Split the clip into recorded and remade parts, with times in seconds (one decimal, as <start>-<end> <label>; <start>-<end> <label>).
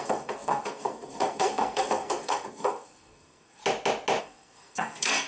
0.0-3.6 remade; 3.6-4.2 recorded; 4.2-5.3 remade